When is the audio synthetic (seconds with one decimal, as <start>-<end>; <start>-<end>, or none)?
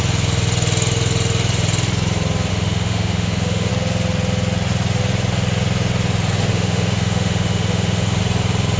2.5-3.7; 6.5-8.2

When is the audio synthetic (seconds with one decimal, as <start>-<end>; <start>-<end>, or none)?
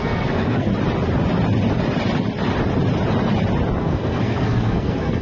0.0-0.7; 3.8-5.2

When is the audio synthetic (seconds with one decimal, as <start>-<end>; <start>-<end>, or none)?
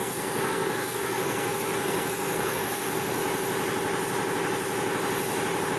0.0-3.2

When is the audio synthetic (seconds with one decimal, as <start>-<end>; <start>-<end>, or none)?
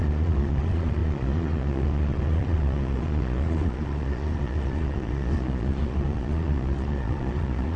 0.0-7.8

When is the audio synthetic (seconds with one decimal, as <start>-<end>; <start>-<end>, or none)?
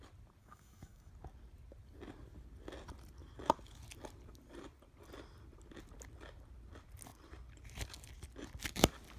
0.4-1.1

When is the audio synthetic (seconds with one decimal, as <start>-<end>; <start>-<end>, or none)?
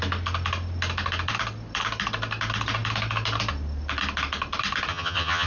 4.9-5.5